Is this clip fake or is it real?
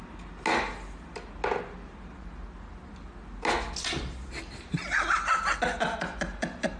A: real